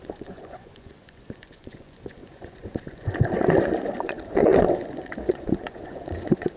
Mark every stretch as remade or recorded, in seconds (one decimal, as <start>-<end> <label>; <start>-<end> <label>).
0.0-6.6 remade